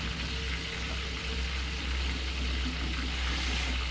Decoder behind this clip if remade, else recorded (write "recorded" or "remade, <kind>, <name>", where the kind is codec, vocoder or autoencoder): recorded